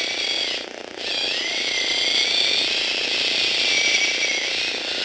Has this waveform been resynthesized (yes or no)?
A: no